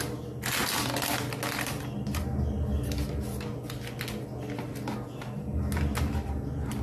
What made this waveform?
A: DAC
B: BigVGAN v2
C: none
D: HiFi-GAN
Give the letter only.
C